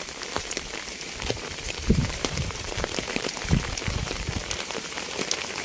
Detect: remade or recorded remade